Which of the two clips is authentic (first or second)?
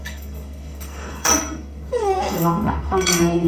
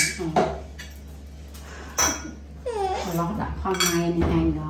second